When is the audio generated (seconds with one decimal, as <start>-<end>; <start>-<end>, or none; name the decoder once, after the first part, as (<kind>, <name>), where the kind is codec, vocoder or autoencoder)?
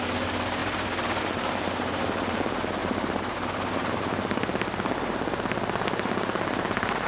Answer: 0.6-1.2 (vocoder, BigVGAN v2)